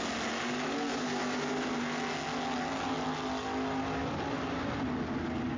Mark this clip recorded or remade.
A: recorded